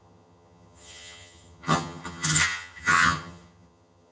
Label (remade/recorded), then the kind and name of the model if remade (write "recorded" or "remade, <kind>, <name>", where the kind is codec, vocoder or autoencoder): remade, vocoder, HiFi-GAN